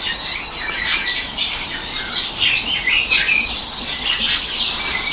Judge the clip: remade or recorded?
recorded